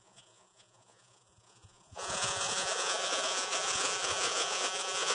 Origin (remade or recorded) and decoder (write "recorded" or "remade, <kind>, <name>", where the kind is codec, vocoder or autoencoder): remade, vocoder, Vocos